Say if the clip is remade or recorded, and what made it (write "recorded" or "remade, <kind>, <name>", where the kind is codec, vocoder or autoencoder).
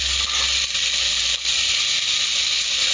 recorded